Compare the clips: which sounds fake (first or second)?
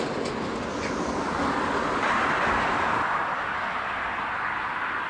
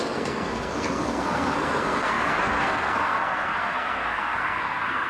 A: second